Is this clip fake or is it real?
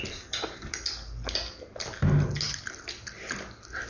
real